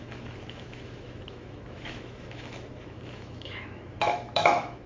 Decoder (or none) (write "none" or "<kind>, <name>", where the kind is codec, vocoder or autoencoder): autoencoder, DAC-VAE